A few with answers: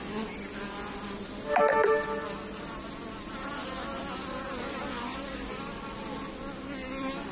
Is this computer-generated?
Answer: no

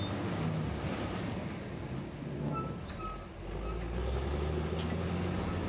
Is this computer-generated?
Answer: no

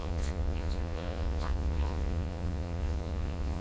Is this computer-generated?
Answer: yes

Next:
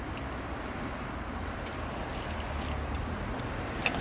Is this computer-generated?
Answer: no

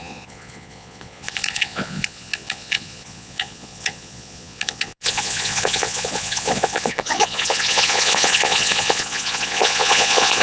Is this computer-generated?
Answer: yes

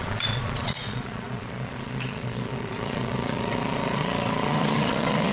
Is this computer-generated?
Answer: yes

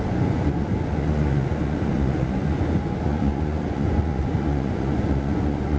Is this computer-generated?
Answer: yes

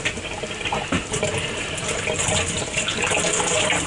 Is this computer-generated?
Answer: no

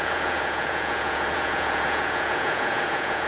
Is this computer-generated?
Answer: yes